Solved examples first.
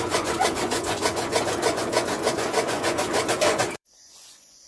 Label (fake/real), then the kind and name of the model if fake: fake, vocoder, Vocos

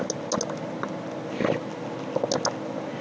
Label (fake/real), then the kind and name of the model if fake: real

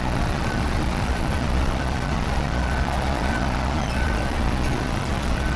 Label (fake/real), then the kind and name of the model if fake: fake, vocoder, Vocos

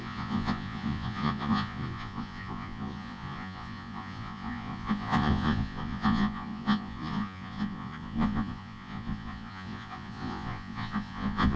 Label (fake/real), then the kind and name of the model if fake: fake, vocoder, Vocos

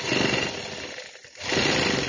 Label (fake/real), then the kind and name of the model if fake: real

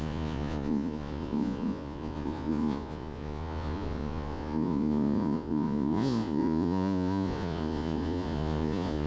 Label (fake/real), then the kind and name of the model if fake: fake, vocoder, Vocos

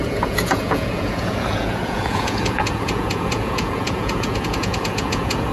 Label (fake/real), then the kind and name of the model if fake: fake, vocoder, Vocos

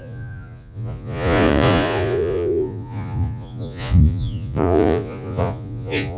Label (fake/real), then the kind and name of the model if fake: fake, vocoder, Vocos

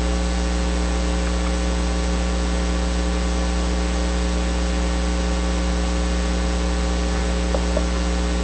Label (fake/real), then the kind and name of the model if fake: real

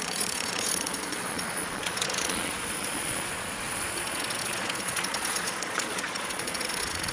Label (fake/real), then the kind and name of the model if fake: fake, vocoder, Vocos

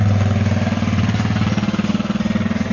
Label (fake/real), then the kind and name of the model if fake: real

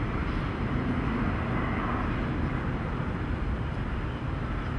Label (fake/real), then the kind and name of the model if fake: real